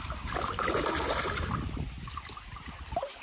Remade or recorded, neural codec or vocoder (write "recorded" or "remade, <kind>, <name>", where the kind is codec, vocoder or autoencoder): recorded